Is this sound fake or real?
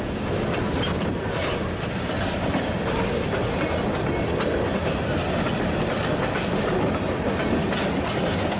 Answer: real